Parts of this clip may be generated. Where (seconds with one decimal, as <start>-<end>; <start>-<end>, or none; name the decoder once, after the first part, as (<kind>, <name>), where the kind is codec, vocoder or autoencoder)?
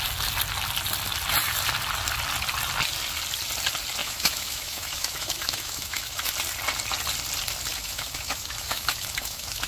4.0-6.3 (autoencoder, DAC-VAE); 7.7-9.7